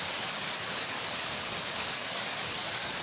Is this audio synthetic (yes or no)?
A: yes